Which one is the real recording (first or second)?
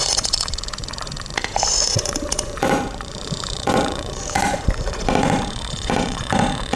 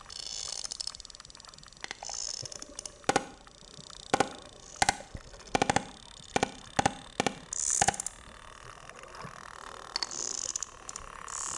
second